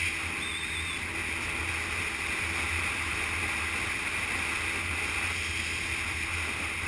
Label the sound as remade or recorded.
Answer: recorded